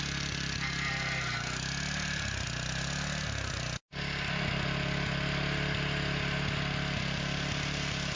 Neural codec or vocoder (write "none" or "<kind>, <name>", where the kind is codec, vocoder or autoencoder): none